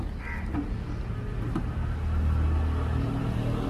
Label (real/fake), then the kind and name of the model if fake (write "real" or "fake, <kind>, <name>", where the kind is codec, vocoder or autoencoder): real